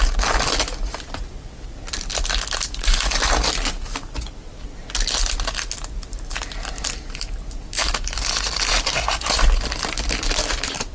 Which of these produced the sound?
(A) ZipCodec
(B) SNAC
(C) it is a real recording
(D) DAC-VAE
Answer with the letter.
C